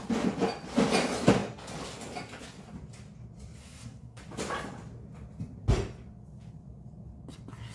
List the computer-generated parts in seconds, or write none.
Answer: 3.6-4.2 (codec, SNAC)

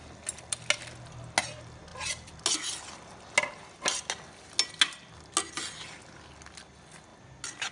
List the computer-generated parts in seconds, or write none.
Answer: none

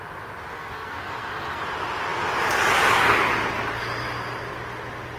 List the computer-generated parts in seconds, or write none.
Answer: 0.5-1.6 (codec, SNAC)

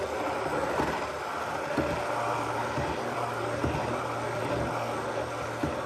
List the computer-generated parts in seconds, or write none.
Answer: none

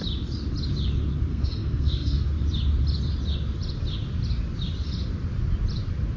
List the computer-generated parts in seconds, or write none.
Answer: 1.3-2.3 (codec, SNAC)

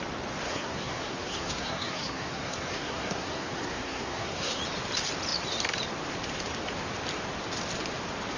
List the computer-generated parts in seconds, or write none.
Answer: 0.4-4.6 (codec, SNAC)

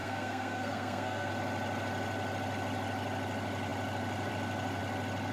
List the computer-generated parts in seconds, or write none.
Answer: 0.0-1.3 (codec, SNAC)

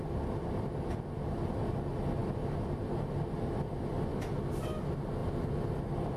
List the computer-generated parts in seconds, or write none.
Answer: none